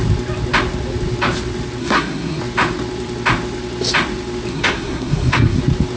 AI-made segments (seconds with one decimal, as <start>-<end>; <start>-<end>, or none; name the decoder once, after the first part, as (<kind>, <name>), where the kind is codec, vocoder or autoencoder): 1.8-2.4 (codec, SNAC); 4.5-5.6